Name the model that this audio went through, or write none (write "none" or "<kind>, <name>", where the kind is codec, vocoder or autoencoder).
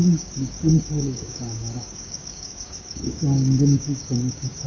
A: codec, DAC